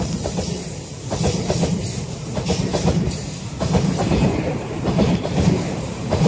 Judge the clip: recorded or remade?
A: remade